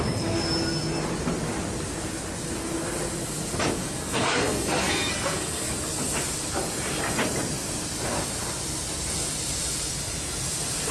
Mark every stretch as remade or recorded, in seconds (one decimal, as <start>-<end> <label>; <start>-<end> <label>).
0.0-3.8 recorded; 3.8-5.7 remade; 5.7-10.9 recorded